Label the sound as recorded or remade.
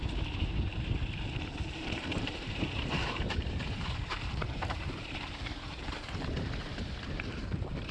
remade